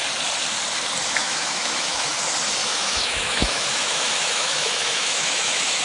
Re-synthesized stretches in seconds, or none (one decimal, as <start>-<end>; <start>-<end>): 1.2-2.1; 2.6-5.8